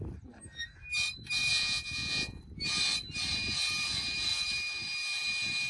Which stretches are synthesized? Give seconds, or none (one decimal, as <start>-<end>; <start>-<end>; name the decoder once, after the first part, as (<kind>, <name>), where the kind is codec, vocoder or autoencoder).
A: 1.5-2.4 (vocoder, Vocos)